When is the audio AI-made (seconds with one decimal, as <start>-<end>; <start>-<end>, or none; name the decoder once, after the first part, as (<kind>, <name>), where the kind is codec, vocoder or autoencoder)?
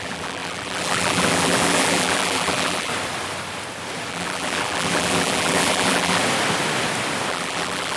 0.0-2.9 (vocoder, BigVGAN v2); 4.1-6.2; 7.3-8.0